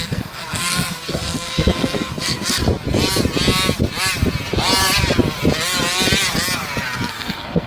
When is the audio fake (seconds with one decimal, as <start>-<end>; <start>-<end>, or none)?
0.0-2.6; 7.1-7.7